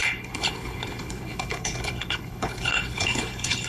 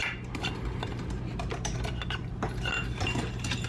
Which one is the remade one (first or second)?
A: first